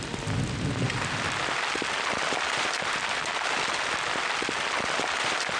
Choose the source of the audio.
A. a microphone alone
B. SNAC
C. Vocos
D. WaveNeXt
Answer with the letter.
A